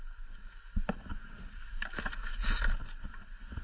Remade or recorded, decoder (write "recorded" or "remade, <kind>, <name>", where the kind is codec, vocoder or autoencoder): remade, vocoder, BigVGAN v2